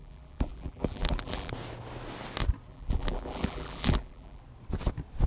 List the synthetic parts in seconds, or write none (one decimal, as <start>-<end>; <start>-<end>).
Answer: 0.0-1.5; 2.7-4.4